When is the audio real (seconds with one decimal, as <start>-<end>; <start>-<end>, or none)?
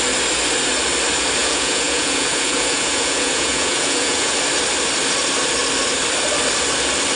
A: 0.0-1.4; 4.4-7.2